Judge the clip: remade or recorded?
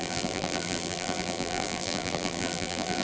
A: remade